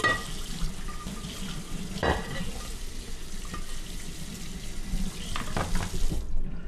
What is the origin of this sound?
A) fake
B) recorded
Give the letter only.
B